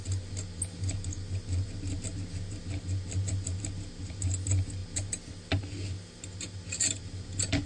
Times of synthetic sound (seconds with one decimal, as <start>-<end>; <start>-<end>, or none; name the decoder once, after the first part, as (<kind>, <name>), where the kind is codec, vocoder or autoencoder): none

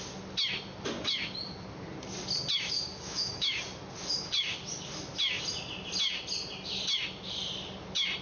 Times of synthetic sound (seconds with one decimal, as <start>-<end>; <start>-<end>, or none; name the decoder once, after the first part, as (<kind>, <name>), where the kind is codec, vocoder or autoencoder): 2.9-3.6 (autoencoder, DAC-VAE)

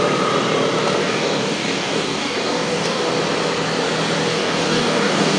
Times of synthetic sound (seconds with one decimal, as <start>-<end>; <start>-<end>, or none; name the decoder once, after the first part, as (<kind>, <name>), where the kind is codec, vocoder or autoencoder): 1.0-3.1 (codec, DAC); 4.3-5.4

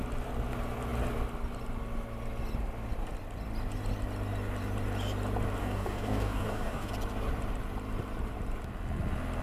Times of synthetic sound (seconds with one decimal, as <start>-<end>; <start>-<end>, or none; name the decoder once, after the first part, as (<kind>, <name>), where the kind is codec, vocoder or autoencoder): 5.6-6.9 (codec, DAC)

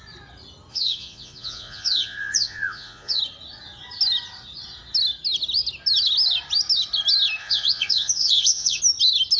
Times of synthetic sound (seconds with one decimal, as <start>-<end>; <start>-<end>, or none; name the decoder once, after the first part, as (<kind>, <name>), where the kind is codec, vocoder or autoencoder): 0.7-3.2 (vocoder, Vocos); 7.4-8.8

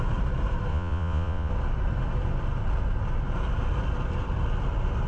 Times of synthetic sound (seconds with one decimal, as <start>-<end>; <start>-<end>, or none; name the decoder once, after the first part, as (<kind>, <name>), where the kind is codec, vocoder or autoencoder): 0.7-1.5 (vocoder, Vocos)

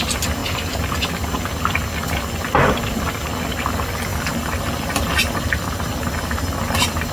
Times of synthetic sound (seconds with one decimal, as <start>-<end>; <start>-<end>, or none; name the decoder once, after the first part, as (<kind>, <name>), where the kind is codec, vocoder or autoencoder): 4.1-7.1 (vocoder, BigVGAN v2)